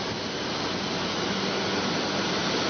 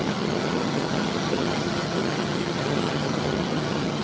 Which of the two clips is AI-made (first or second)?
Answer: second